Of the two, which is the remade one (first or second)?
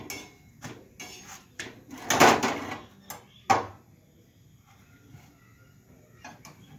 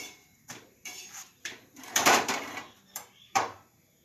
second